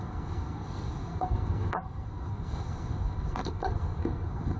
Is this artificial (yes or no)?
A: yes